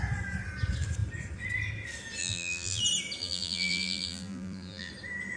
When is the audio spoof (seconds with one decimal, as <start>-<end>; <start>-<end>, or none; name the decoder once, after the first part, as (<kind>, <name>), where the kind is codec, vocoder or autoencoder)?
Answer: 2.2-2.8 (vocoder, BigVGAN v2); 3.2-4.9